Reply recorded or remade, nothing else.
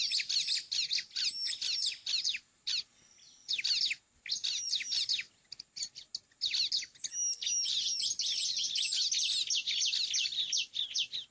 recorded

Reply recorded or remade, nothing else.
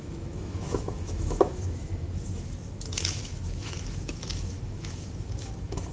remade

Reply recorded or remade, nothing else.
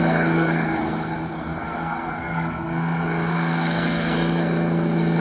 remade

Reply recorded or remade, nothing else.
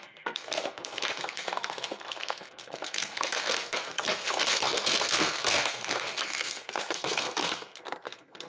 remade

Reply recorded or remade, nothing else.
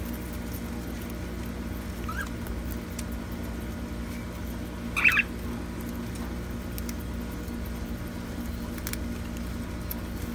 recorded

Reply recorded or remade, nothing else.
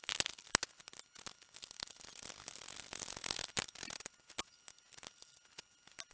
recorded